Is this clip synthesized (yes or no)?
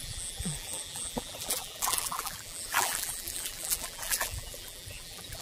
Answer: yes